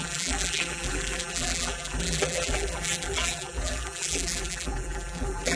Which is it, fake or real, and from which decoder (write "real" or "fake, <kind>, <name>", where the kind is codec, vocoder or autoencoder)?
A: fake, vocoder, BigVGAN v2